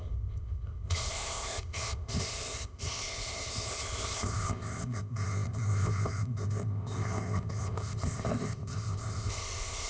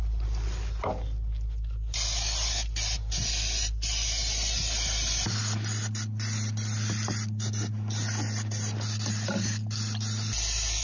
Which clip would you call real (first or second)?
second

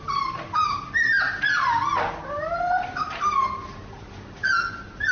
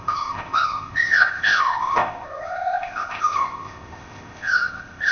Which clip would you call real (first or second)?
first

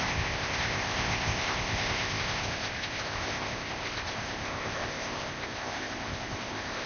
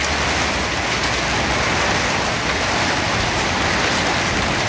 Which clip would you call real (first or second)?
second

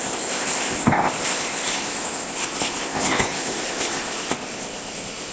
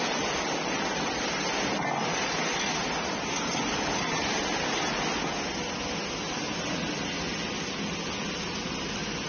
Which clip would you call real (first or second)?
second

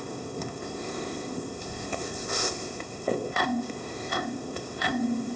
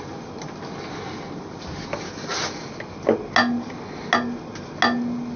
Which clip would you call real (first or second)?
second